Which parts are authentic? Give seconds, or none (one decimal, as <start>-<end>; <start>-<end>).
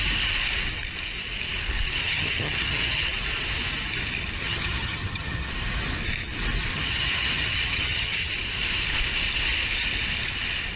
0.0-2.0; 3.0-4.4; 5.5-6.7; 8.3-10.8